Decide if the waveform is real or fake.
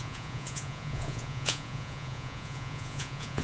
fake